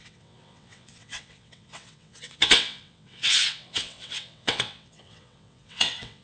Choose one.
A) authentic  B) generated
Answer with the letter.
B